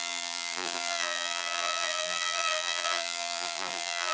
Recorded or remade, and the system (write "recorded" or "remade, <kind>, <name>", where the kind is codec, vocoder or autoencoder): remade, vocoder, BigVGAN v2